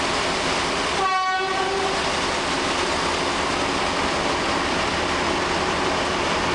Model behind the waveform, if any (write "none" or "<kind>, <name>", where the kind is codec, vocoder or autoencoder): none